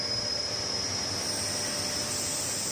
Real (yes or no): yes